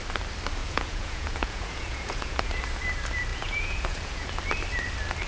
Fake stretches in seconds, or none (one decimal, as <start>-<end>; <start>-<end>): 0.6-2.6; 3.3-4.3